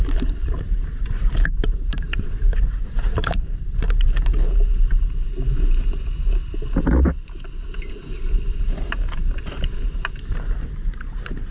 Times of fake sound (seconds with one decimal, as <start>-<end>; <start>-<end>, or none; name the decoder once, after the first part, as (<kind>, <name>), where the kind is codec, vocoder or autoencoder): 0.0-4.3 (vocoder, BigVGAN v2); 7.9-11.5